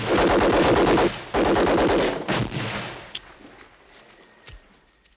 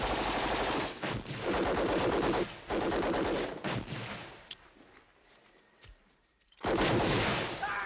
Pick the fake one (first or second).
second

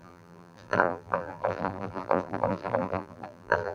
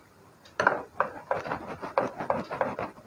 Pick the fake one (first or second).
first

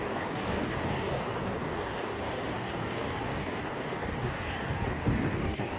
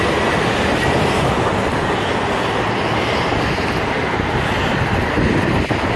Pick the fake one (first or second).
first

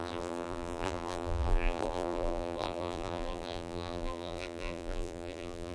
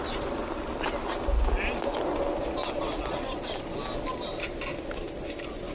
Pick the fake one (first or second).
first